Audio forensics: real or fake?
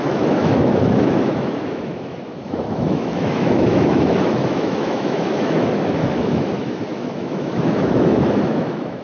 fake